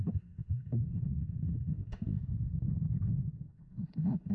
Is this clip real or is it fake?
fake